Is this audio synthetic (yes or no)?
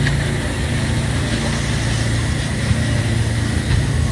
no